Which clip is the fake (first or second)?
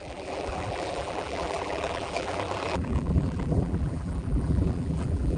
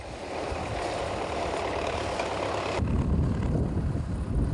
first